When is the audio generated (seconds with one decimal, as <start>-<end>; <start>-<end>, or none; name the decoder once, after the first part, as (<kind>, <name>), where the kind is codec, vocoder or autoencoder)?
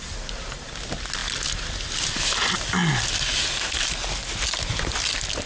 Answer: none